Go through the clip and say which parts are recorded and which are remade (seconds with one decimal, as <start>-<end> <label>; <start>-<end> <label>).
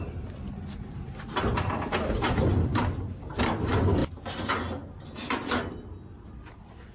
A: 0.0-6.9 recorded